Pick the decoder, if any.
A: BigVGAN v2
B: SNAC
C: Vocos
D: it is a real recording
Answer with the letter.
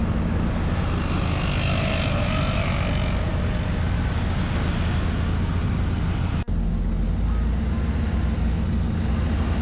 D